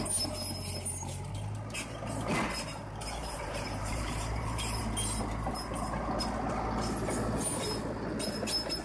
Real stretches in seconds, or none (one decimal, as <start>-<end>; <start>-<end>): 0.0-3.2; 4.8-8.8